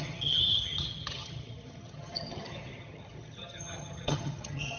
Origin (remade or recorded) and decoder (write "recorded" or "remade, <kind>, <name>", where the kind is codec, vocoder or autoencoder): remade, vocoder, HiFi-GAN